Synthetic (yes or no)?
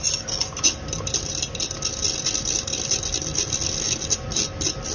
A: no